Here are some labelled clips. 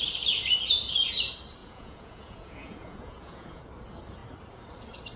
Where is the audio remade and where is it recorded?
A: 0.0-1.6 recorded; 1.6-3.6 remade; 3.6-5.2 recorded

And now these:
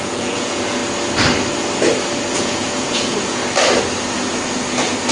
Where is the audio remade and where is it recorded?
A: 0.0-0.8 remade; 0.8-2.3 recorded; 2.3-3.4 remade; 3.4-5.1 recorded